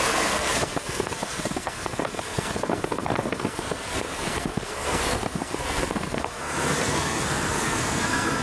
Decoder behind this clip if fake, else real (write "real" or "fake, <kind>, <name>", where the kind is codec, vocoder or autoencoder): fake, codec, SNAC